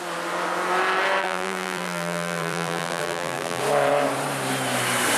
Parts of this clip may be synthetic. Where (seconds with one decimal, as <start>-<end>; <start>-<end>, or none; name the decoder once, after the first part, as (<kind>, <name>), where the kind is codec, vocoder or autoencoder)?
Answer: 1.2-3.6 (vocoder, BigVGAN v2)